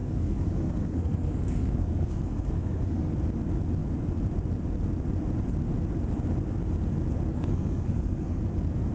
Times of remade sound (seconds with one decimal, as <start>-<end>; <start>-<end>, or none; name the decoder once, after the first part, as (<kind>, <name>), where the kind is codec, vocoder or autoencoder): 0.0-3.1 (codec, SNAC); 7.3-8.4